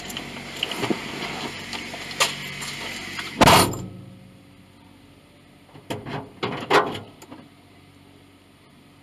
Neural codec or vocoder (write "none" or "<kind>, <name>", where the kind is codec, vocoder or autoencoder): none